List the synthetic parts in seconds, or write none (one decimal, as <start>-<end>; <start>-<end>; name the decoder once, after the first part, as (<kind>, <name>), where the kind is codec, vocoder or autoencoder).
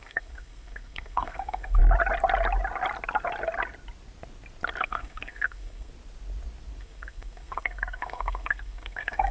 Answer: 0.0-1.8 (codec, SNAC); 4.8-5.9; 6.8-9.3